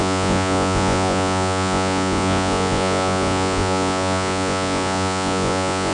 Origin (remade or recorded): remade